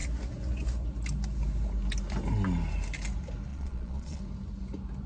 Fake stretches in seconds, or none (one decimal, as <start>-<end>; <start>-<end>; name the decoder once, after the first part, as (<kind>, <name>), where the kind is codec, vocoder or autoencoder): 3.5-4.2 (vocoder, Vocos)